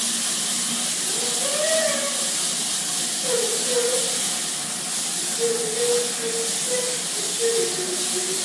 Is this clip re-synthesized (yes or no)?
no